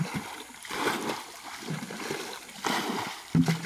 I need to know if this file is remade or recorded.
recorded